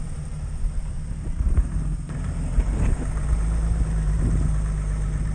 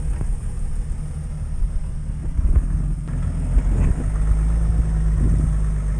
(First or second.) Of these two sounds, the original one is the second